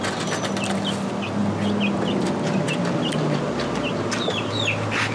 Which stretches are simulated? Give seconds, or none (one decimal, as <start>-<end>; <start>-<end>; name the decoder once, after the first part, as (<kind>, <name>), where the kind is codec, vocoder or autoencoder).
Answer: none